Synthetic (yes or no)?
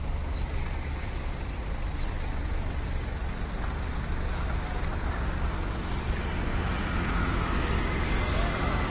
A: no